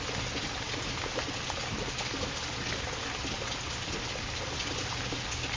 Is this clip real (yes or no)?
yes